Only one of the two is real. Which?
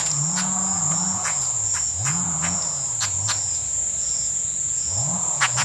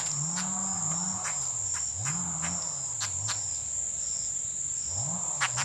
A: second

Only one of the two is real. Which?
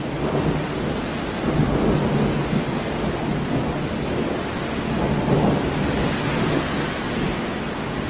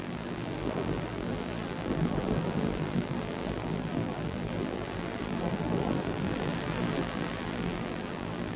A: first